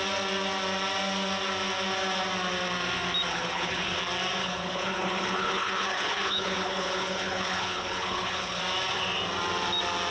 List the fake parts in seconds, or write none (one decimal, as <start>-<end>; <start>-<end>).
3.3-4.0; 4.4-8.6